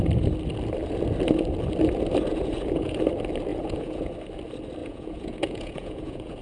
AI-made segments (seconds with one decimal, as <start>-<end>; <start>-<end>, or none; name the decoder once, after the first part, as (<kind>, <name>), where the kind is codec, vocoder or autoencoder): 2.3-3.0 (vocoder, Vocos); 3.5-4.1; 4.8-6.4